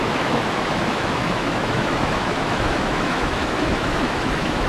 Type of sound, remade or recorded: remade